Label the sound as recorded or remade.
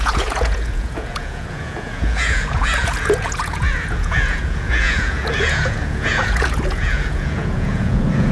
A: remade